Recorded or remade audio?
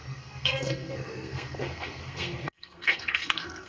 remade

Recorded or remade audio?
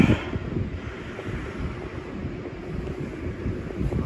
recorded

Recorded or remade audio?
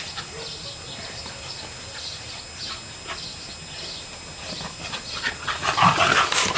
recorded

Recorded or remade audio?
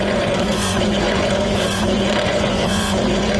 remade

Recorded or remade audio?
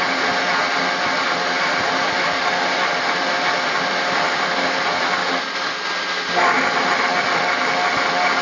recorded